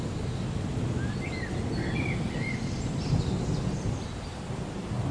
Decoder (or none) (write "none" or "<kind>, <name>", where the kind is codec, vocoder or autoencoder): none